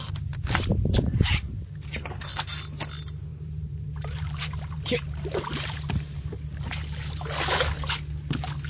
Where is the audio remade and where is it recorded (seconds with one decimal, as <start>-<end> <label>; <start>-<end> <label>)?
0.0-0.7 recorded; 0.7-1.4 remade; 1.4-3.3 recorded; 3.3-7.9 remade; 7.9-8.7 recorded